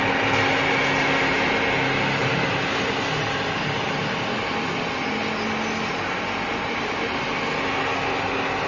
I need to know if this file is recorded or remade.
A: recorded